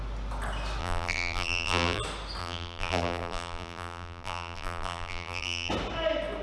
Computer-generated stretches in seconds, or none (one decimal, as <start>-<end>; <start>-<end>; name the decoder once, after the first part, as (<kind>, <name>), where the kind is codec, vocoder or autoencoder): 0.8-2.0 (vocoder, BigVGAN v2); 2.4-5.7